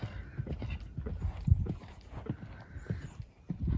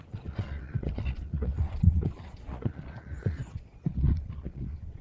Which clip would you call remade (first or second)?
second